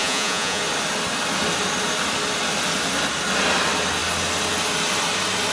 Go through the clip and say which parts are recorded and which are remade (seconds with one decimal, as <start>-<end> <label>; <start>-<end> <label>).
0.0-0.6 remade; 0.6-5.5 recorded